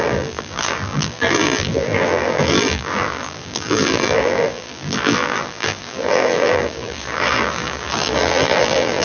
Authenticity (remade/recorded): remade